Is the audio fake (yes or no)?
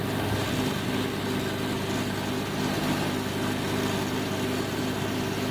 no